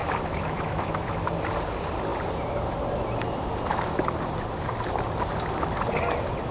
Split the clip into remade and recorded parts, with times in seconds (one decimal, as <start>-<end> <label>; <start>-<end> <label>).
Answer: 0.0-1.3 remade; 1.3-6.5 recorded